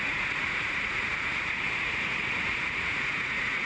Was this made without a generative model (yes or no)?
no